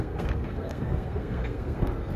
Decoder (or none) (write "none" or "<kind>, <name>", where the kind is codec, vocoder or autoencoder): codec, SNAC